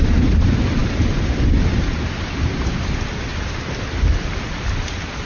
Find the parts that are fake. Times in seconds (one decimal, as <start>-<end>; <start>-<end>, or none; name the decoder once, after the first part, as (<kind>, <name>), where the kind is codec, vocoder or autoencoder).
none